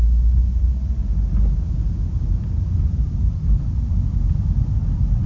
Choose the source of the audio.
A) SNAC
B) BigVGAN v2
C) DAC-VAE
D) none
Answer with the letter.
D